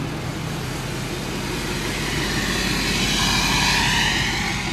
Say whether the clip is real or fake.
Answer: real